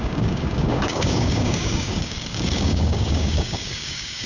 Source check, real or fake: fake